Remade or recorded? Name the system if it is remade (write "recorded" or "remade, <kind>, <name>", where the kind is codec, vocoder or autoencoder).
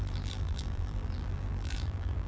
remade, vocoder, BigVGAN v2